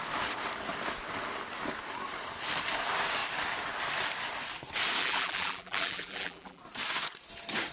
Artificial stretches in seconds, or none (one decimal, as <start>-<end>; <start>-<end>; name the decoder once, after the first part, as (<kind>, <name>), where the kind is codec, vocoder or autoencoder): 5.0-6.6 (vocoder, BigVGAN v2)

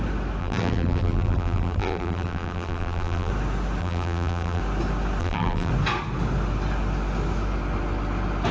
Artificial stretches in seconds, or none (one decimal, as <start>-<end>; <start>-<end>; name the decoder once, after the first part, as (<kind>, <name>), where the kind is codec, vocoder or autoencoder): 0.4-3.3 (vocoder, BigVGAN v2); 3.8-4.6; 5.2-5.7

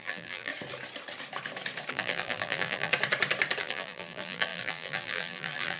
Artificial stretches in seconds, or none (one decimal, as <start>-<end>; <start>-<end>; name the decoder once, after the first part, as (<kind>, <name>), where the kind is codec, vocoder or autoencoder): 0.0-0.5 (vocoder, BigVGAN v2); 1.9-2.9; 3.6-5.8

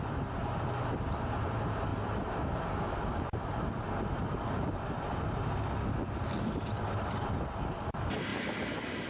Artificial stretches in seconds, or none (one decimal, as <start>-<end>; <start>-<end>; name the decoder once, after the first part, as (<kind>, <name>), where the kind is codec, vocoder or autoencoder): none

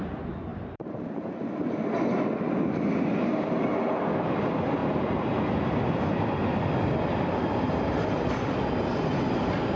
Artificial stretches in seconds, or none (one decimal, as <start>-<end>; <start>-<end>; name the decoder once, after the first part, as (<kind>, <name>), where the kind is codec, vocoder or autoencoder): 0.5-1.4 (vocoder, BigVGAN v2); 4.8-6.0

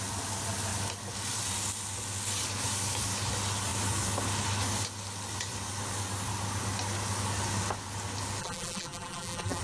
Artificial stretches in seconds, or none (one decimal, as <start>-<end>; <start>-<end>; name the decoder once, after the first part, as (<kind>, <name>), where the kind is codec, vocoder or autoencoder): 8.4-9.6 (vocoder, BigVGAN v2)

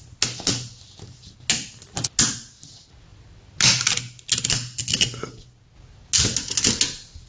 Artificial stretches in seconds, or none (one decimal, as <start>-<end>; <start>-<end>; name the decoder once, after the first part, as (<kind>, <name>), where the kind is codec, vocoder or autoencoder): none

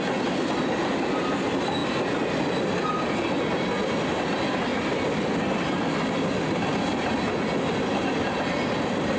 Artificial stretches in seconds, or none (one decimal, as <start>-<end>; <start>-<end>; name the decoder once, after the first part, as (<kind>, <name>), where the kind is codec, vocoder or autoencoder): none